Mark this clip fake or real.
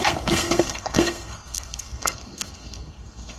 fake